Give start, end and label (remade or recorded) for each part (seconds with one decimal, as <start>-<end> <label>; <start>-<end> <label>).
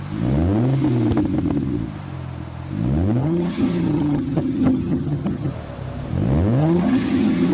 0.0-3.2 recorded; 3.2-5.5 remade; 5.5-6.6 recorded; 6.6-7.5 remade